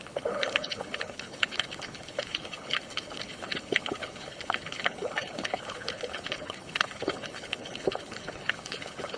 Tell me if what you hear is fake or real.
fake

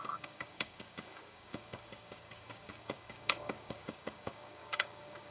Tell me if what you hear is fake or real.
fake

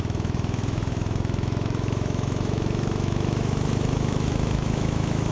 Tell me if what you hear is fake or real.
fake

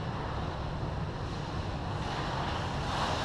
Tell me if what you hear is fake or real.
real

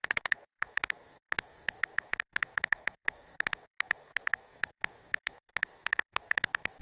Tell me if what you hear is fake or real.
fake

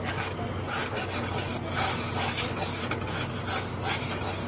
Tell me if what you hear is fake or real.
real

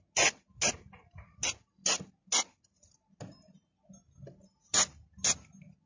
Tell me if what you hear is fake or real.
real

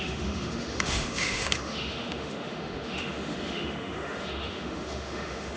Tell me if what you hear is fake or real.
fake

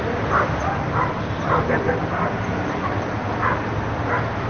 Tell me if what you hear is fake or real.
real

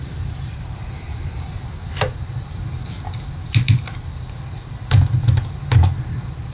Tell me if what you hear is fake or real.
fake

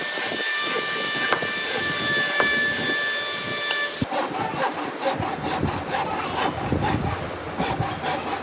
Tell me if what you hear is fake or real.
real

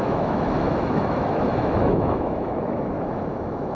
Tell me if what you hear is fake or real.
fake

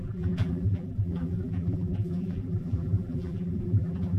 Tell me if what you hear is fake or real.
fake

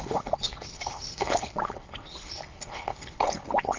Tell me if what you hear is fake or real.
fake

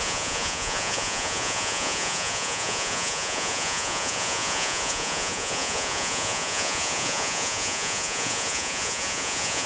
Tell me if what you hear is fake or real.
fake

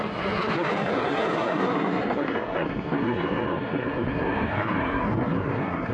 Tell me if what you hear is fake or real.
fake